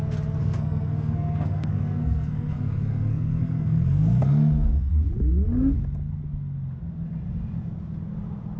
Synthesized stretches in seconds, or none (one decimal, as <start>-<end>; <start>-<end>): 0.4-4.9